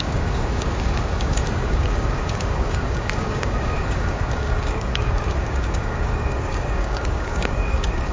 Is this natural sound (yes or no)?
no